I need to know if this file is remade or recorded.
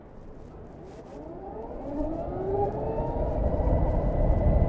recorded